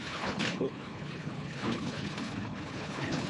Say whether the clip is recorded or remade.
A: remade